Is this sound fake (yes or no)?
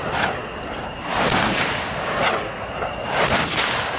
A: no